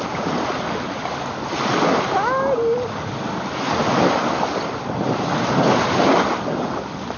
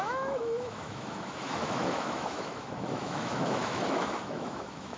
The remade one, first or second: second